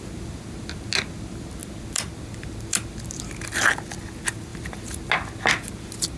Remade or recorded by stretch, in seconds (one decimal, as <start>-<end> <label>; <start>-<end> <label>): 0.0-6.2 recorded